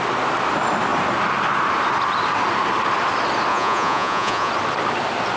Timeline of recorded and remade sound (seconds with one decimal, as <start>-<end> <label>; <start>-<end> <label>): 0.0-3.5 recorded; 3.5-4.5 remade; 4.5-5.4 recorded